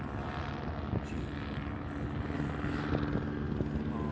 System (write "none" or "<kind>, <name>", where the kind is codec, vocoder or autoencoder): none